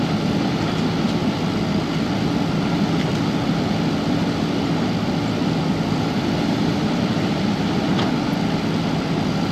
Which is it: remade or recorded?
recorded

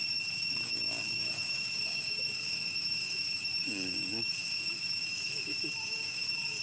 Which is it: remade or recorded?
remade